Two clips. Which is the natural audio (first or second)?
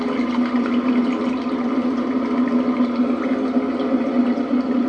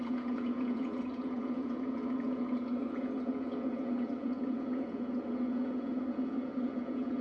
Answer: first